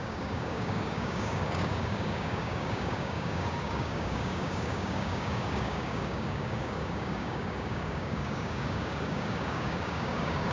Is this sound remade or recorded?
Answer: remade